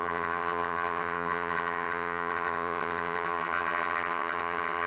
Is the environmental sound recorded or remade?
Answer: remade